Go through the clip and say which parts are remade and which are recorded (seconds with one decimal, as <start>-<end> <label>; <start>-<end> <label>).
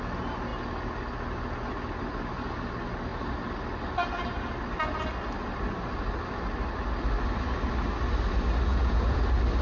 0.0-8.7 recorded; 8.7-9.2 remade; 9.2-9.6 recorded